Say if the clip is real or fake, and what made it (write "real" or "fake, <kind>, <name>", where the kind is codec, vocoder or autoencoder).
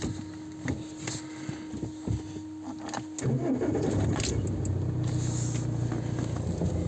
real